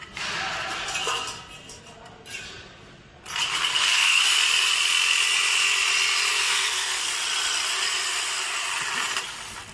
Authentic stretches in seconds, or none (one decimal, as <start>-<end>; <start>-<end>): 0.0-3.7; 4.2-6.3; 7.1-9.7